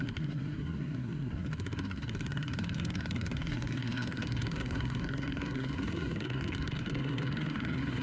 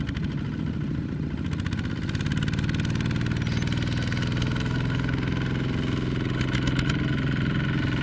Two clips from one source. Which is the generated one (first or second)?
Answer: first